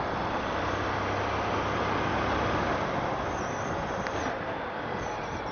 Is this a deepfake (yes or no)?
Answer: no